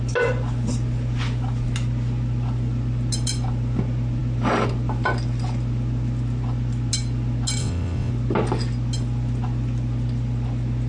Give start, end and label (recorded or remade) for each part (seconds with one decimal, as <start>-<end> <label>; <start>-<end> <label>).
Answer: 0.0-7.6 recorded; 7.6-8.1 remade; 8.1-10.9 recorded